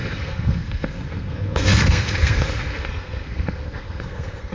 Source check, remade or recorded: remade